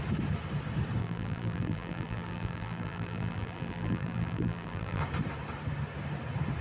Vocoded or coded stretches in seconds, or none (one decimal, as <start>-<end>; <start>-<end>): 1.0-5.0